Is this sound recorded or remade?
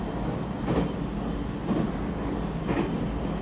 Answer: recorded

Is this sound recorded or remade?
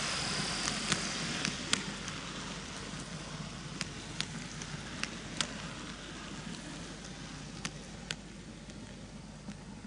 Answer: recorded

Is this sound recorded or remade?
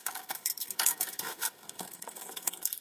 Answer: remade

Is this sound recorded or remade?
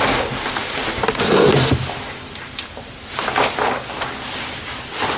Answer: recorded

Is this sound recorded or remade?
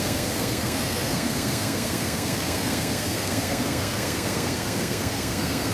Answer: remade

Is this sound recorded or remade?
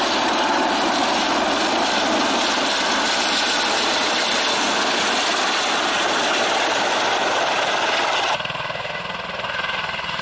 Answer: recorded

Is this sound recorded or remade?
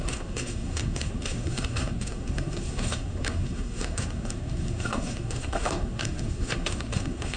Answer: remade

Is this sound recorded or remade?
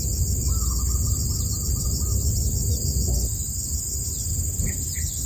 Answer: recorded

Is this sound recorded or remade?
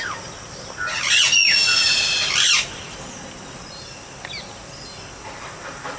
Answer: recorded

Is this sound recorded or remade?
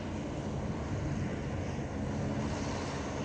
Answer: recorded